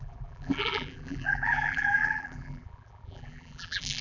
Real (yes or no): no